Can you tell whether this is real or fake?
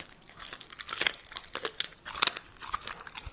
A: real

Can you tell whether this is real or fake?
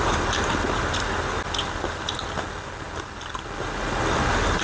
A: real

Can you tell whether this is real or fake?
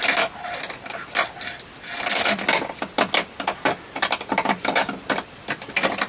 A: real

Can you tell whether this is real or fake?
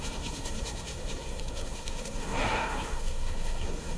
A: fake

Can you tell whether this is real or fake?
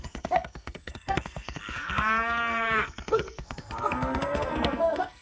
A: fake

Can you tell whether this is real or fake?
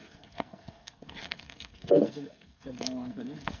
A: fake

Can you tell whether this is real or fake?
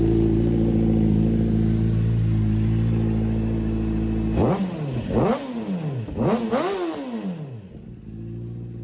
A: real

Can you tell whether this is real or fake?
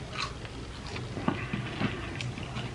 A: real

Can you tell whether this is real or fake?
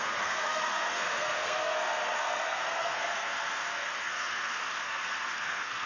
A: fake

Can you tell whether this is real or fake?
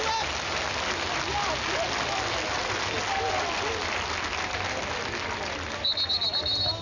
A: real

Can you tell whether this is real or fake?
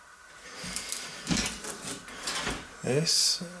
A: real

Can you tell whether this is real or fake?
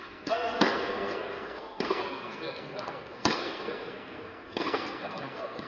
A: fake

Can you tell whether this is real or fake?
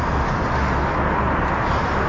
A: real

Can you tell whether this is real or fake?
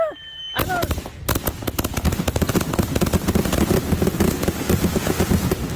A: real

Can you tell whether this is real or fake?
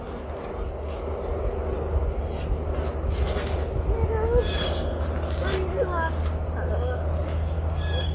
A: real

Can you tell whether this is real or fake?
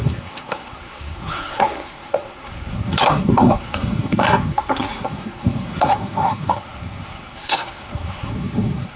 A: fake